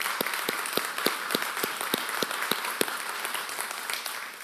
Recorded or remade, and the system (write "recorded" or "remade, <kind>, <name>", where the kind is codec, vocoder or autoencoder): recorded